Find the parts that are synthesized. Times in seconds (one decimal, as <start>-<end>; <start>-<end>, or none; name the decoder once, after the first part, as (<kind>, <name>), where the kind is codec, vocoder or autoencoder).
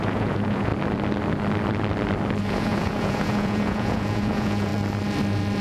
0.0-0.7 (vocoder, Vocos); 2.4-4.7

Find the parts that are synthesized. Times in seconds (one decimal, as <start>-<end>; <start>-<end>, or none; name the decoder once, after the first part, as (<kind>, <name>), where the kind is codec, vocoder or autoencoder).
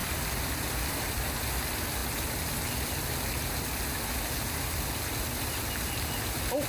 0.0-1.3 (vocoder, BigVGAN v2)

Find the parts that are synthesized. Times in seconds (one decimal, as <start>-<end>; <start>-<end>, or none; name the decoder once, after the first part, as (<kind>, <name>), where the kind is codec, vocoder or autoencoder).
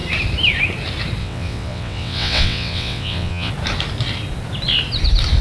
1.2-3.5 (vocoder, WaveNeXt)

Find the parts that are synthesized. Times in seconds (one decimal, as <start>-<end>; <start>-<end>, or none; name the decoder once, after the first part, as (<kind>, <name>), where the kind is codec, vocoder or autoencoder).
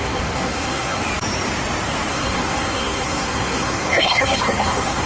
0.0-1.0 (codec, SNAC); 2.1-5.1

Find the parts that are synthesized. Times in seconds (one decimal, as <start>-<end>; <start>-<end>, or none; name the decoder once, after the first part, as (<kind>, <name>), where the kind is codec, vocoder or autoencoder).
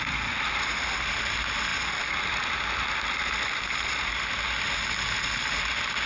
none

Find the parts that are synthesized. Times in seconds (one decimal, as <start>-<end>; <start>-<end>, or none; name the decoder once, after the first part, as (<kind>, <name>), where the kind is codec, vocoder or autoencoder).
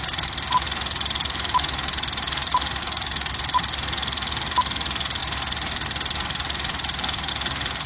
2.8-3.3 (codec, DAC)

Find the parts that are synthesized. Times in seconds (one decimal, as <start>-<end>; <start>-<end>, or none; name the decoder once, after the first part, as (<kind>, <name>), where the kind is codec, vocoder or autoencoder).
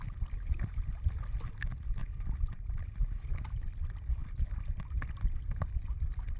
none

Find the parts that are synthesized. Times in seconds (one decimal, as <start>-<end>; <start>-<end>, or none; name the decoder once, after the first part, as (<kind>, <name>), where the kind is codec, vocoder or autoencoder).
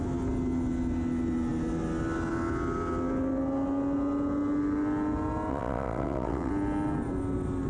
5.5-6.5 (vocoder, WaveNeXt)